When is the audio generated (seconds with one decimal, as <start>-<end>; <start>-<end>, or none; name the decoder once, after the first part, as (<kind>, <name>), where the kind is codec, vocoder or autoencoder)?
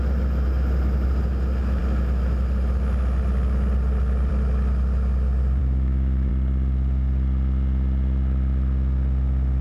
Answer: 5.6-6.3 (autoencoder, DAC-VAE)